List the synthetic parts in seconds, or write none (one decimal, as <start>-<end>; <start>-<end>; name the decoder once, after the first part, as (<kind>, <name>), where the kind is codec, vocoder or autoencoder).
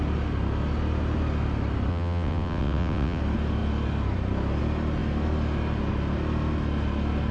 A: 1.9-3.2 (vocoder, WaveNeXt)